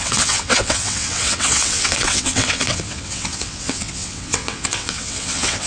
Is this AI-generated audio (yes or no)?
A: yes